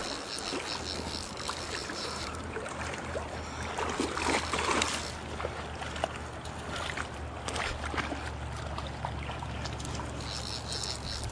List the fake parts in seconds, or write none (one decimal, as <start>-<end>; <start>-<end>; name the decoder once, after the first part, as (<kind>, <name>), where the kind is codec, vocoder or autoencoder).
1.8-3.0 (vocoder, BigVGAN v2)